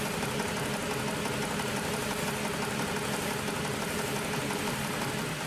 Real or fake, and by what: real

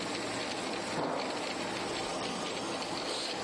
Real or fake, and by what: real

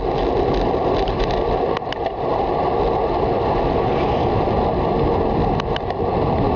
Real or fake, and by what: real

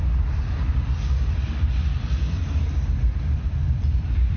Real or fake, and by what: fake, vocoder, BigVGAN v2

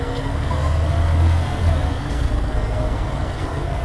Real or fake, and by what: fake, codec, SNAC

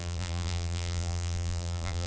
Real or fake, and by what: fake, vocoder, BigVGAN v2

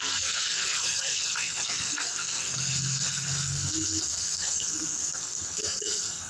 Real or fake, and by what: fake, codec, SNAC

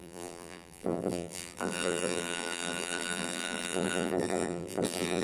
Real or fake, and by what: fake, vocoder, BigVGAN v2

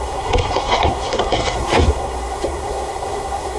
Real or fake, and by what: fake, codec, SNAC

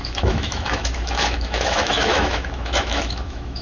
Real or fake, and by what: fake, autoencoder, DAC-VAE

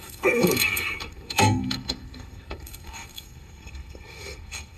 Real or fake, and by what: fake, codec, SNAC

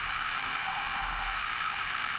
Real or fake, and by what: fake, autoencoder, DAC-VAE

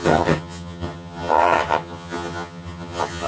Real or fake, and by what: fake, vocoder, HiFi-GAN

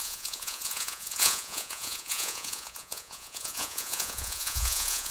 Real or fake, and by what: fake, vocoder, Vocos